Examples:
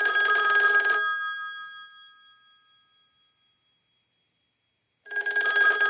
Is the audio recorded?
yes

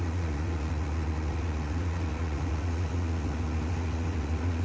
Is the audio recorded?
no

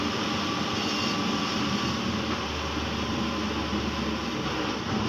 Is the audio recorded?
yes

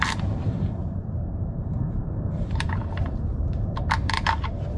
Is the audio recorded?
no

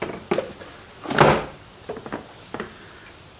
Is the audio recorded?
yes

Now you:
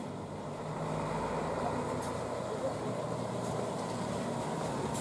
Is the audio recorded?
yes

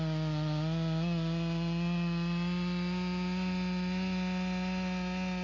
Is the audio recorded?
yes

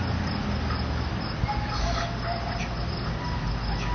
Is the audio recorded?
yes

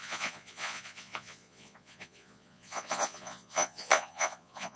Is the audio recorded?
no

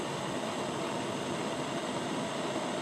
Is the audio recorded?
yes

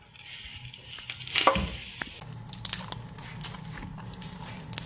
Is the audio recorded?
yes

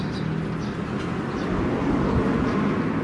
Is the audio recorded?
yes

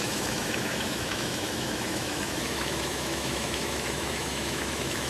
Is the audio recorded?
no